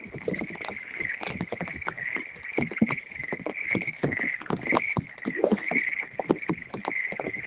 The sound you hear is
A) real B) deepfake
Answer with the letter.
B